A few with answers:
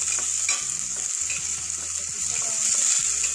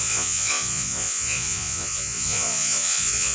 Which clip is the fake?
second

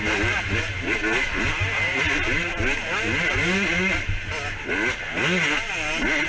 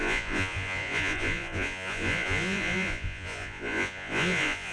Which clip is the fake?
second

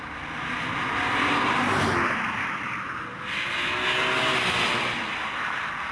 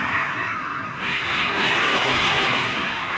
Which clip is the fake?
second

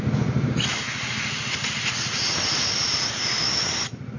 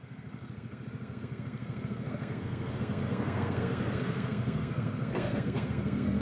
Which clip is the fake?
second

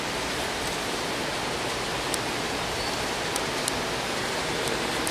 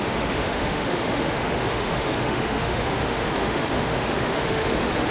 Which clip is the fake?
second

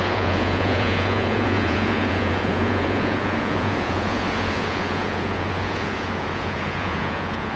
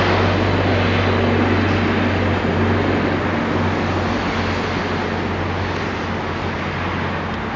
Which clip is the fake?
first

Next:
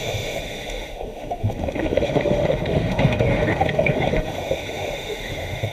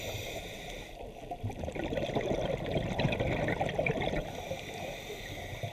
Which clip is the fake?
first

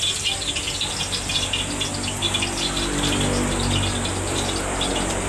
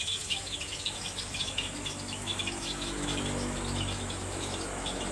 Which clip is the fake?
second